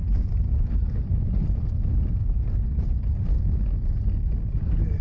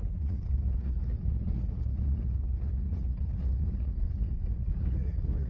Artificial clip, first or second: second